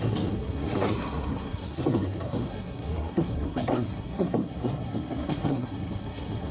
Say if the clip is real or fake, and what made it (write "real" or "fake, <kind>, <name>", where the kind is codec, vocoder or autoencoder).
fake, codec, SNAC